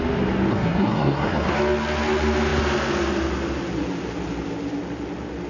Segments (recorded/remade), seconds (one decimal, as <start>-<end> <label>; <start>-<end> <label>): 0.0-0.5 recorded; 0.5-1.5 remade; 1.5-5.5 recorded